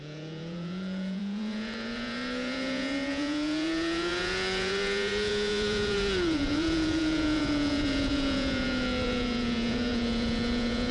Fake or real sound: fake